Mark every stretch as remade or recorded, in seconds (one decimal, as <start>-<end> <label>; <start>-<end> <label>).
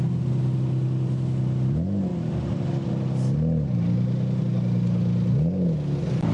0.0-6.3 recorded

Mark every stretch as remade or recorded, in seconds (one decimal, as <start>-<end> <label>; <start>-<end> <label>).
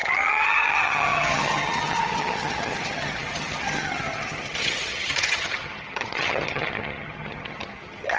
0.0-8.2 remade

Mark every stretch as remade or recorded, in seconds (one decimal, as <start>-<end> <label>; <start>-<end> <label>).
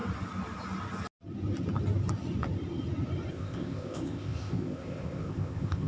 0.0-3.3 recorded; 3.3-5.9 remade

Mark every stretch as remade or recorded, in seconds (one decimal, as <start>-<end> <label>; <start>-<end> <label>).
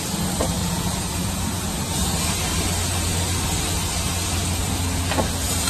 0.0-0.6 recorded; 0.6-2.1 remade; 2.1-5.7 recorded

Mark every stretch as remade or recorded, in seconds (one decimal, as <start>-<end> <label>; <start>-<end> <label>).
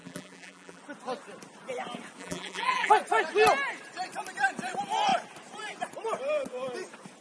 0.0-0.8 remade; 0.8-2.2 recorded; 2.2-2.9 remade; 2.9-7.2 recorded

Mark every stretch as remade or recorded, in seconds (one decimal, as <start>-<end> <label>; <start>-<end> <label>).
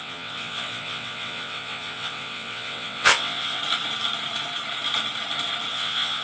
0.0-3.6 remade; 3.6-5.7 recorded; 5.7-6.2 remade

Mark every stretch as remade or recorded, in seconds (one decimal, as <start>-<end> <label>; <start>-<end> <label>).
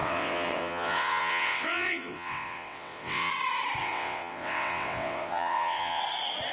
0.0-3.3 remade; 3.3-3.8 recorded; 3.8-6.0 remade; 6.0-6.5 recorded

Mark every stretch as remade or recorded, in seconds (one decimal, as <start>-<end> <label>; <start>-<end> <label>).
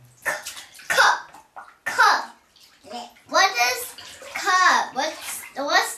0.0-6.0 recorded